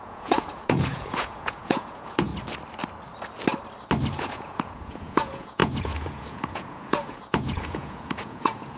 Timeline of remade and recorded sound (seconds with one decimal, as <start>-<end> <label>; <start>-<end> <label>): 0.0-2.3 remade; 2.3-4.1 recorded; 4.1-8.8 remade